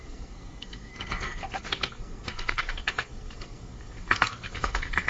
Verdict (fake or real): fake